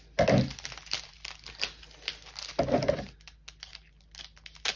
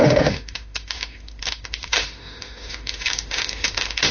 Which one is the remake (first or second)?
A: second